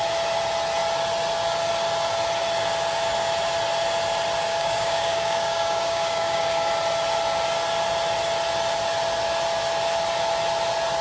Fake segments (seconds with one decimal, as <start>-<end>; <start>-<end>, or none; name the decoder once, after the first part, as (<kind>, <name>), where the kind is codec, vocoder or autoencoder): 4.5-6.7 (codec, DAC)